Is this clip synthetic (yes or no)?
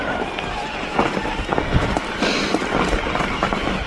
no